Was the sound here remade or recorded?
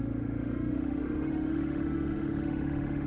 remade